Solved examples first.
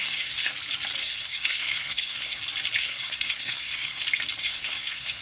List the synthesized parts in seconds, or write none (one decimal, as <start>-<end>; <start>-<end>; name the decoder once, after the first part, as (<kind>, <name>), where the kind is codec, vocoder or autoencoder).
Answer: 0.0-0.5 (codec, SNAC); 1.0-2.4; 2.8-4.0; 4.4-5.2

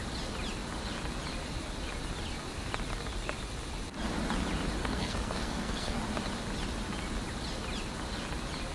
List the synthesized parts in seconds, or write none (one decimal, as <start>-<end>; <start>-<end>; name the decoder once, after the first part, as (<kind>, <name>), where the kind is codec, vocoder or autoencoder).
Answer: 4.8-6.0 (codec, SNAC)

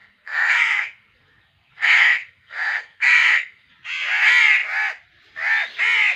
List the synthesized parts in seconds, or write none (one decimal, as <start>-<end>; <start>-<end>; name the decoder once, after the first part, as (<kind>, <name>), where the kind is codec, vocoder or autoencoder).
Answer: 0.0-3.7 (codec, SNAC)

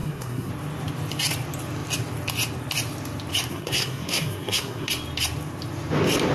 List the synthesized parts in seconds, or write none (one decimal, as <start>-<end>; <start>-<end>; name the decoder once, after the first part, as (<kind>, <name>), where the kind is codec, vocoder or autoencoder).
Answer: 0.0-0.5 (codec, SNAC); 3.5-4.9

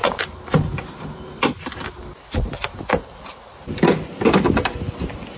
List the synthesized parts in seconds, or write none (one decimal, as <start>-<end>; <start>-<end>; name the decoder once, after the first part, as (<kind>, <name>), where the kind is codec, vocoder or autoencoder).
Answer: none